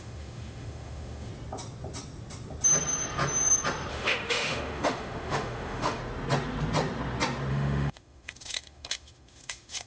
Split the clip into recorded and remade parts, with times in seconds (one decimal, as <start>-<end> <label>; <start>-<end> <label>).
0.0-1.3 remade; 1.3-3.9 recorded; 3.9-6.0 remade; 6.0-7.5 recorded; 7.5-9.9 remade